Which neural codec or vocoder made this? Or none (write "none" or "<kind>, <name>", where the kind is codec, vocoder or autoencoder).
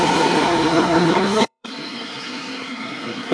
codec, SNAC